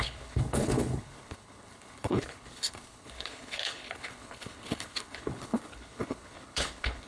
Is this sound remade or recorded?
remade